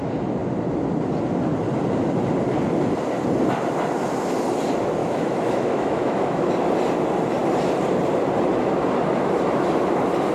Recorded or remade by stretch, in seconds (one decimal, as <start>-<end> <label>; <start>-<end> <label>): 0.0-5.0 recorded; 5.0-6.5 remade; 6.5-10.3 recorded